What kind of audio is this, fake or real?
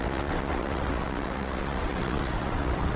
fake